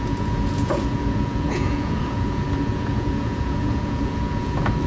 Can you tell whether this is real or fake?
fake